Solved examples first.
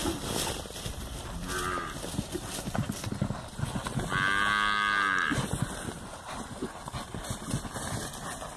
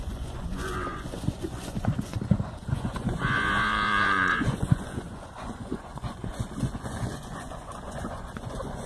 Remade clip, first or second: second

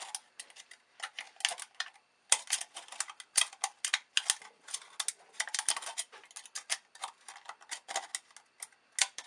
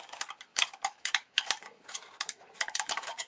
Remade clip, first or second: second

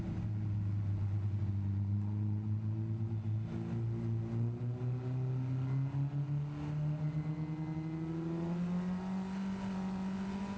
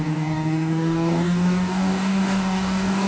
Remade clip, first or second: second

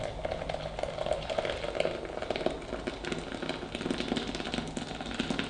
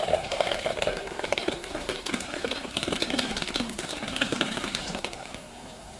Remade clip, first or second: second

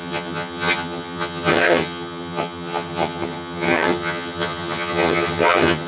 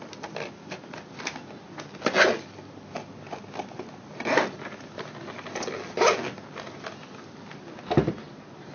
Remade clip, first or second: first